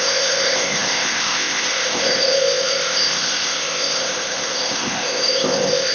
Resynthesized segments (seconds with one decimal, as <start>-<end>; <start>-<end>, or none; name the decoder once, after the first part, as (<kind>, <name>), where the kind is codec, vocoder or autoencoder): 0.0-5.9 (codec, ZipCodec)